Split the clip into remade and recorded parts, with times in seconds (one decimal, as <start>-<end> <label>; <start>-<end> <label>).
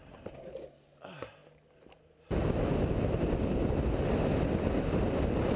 0.0-5.6 recorded